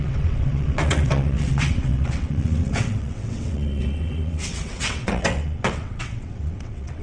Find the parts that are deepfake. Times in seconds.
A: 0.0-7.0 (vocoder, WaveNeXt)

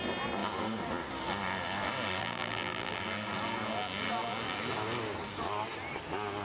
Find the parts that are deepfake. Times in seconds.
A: 2.2-3.0 (vocoder, BigVGAN v2)

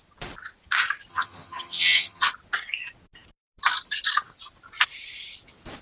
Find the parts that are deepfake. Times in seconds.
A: 1.1-2.3 (vocoder, HiFi-GAN)

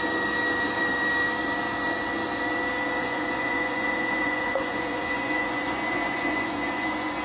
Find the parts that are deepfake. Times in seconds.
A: 3.0-7.2 (vocoder, Vocos)

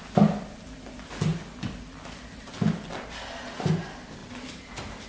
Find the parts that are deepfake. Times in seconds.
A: 1.3-2.9 (vocoder, BigVGAN v2); 4.2-5.1